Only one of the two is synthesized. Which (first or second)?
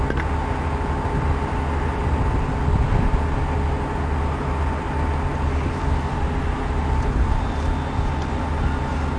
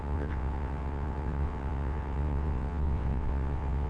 second